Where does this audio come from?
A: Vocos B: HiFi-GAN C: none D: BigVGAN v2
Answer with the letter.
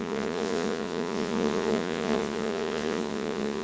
A